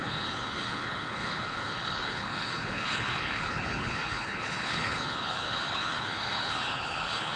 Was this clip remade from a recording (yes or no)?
yes